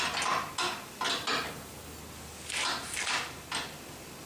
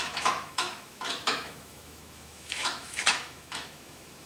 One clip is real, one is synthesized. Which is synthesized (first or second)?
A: second